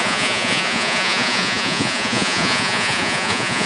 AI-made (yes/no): yes